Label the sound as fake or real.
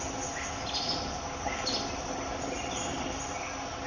real